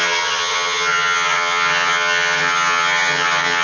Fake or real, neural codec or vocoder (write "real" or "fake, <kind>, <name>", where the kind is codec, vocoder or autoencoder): fake, vocoder, HiFi-GAN